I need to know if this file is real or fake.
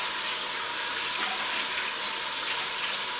real